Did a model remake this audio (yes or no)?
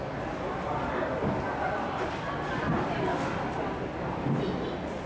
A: no